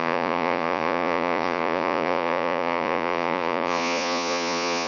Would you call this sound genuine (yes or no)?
no